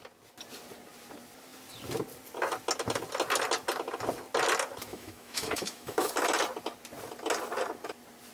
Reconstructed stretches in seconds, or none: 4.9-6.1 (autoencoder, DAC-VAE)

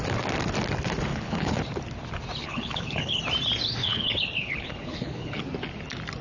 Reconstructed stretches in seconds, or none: 1.1-1.6 (codec, HILCodec); 2.4-3.2; 3.8-5.4